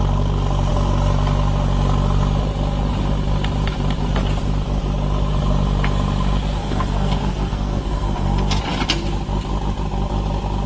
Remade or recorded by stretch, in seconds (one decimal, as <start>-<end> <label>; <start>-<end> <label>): 0.0-6.6 recorded; 6.6-8.6 remade; 8.6-10.7 recorded